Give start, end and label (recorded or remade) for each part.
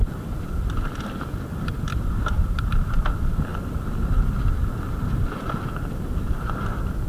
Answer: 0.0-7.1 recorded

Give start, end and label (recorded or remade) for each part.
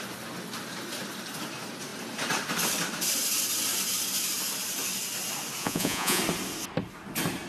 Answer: 0.0-5.6 recorded; 5.6-6.2 remade; 6.2-7.5 recorded